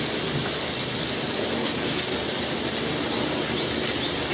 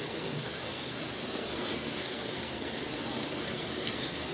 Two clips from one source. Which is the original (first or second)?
first